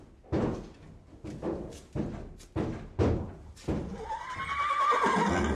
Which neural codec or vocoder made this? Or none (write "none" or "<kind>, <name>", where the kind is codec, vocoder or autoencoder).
none